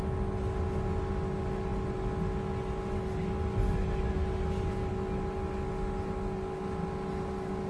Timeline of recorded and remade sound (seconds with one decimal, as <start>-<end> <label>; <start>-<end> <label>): 0.0-7.7 recorded